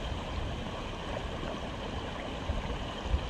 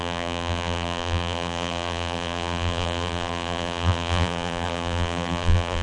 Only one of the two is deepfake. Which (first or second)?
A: second